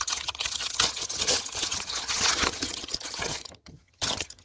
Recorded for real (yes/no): no